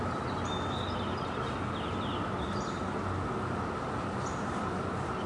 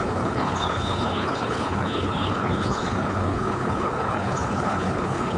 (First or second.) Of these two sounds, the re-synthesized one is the second